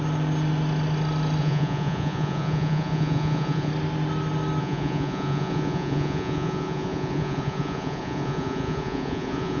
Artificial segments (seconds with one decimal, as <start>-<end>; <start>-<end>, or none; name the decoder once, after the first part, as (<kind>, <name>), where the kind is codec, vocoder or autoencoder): 1.4-3.7 (vocoder, Vocos); 4.6-9.6